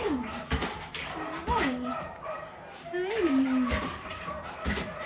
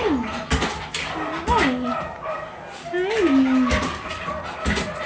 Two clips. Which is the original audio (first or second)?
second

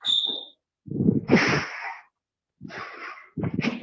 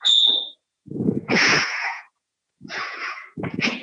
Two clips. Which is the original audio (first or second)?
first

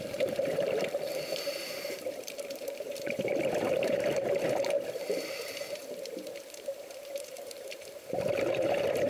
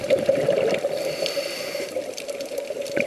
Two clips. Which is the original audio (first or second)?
second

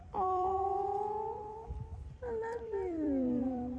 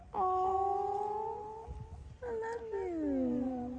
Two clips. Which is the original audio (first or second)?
second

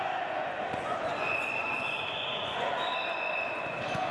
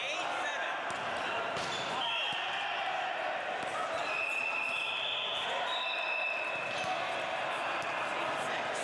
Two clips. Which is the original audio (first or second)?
second